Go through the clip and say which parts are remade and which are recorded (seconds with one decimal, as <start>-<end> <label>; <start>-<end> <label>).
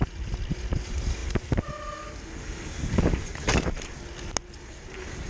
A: 0.0-5.3 recorded